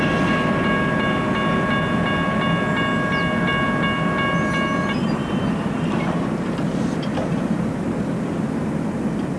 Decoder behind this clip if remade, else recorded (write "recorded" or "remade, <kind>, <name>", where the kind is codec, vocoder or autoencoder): recorded